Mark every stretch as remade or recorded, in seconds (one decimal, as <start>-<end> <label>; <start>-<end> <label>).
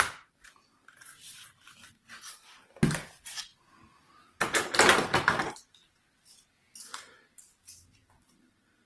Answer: 0.0-8.9 recorded